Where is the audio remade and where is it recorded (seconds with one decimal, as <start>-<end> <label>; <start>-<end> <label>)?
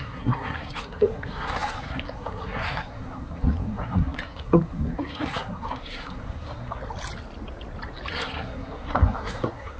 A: 0.0-6.8 remade; 6.8-8.1 recorded; 8.1-9.8 remade